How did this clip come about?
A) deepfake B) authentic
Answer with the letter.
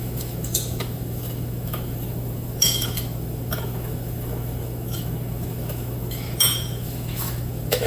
A